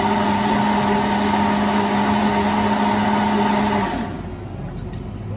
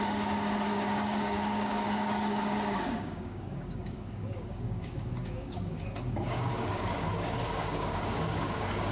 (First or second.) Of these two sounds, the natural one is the first